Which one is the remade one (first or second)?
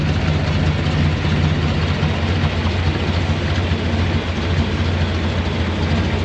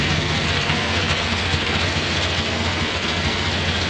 second